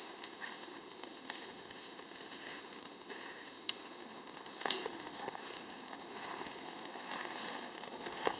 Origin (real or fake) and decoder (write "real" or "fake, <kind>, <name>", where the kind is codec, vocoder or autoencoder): fake, autoencoder, DAC-VAE